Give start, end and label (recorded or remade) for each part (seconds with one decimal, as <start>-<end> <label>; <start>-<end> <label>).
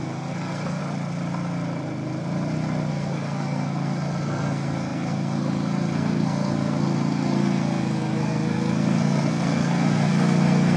0.0-0.8 remade; 0.8-2.9 recorded; 2.9-10.8 remade